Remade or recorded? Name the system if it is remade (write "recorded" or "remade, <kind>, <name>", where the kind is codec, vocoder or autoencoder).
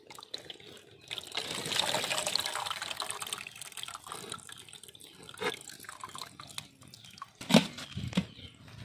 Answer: recorded